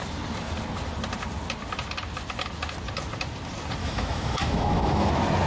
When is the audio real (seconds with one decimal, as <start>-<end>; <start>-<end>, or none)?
0.0-3.8; 5.1-5.5